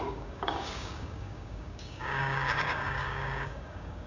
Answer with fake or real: fake